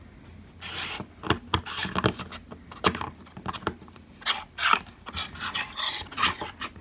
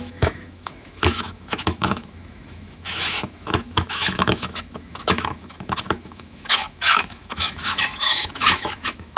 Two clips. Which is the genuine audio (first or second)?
first